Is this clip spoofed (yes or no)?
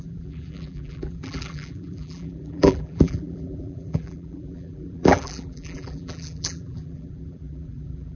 yes